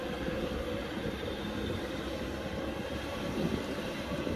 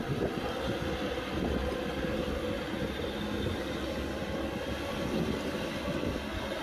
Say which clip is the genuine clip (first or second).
second